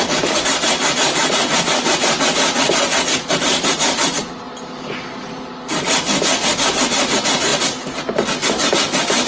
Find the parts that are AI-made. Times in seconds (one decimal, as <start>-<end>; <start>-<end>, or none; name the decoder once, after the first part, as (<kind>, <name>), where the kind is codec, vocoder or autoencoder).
none